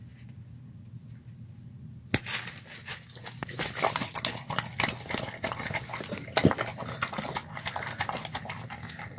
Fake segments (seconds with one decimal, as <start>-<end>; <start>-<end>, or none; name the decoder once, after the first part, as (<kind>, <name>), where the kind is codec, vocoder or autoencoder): none